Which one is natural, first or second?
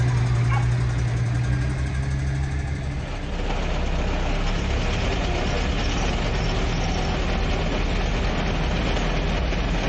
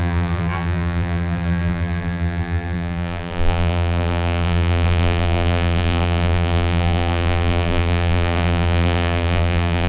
first